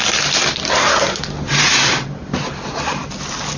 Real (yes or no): yes